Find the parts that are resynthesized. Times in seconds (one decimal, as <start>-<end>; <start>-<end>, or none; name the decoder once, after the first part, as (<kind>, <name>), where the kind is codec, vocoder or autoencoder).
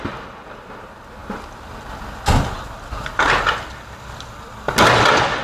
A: none